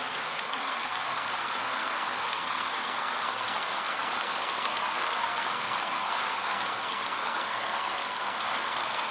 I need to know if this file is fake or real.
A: fake